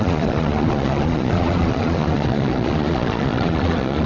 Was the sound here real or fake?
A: fake